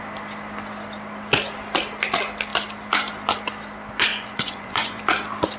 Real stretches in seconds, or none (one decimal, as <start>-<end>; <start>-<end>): 0.0-4.1; 5.0-5.6